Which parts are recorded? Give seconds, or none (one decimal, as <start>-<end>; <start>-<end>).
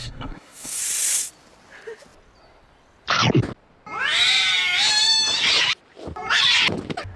0.8-7.2